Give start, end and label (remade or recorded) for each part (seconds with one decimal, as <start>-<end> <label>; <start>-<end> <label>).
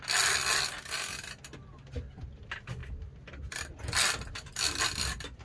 0.0-5.4 recorded